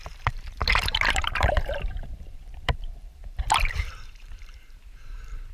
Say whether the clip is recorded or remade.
remade